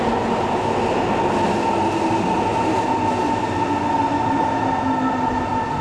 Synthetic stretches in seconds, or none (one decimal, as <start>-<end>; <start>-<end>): none